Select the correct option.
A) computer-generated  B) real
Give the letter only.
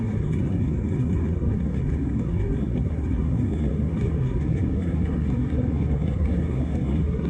A